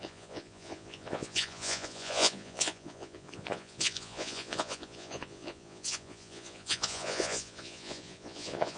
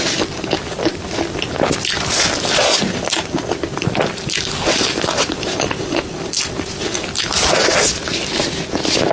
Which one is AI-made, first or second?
first